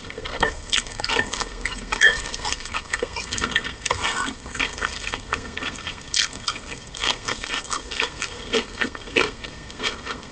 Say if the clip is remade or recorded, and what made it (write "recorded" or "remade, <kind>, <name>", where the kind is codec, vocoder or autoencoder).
remade, codec, SNAC